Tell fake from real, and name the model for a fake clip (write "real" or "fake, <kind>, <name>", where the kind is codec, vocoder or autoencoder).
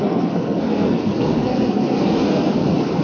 fake, codec, SNAC